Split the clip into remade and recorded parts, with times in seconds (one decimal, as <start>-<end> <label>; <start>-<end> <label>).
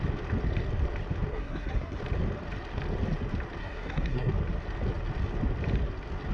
0.0-1.3 recorded; 1.3-2.0 remade; 2.0-3.6 recorded; 3.6-4.3 remade; 4.3-6.3 recorded